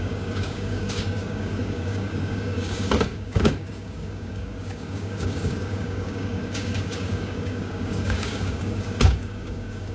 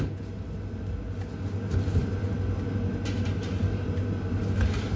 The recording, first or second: second